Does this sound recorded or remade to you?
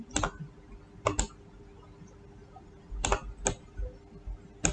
recorded